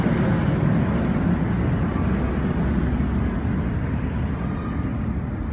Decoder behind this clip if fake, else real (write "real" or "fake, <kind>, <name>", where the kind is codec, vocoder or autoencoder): real